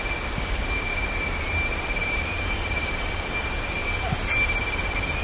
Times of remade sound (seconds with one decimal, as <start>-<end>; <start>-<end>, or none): 0.0-3.8; 4.3-5.2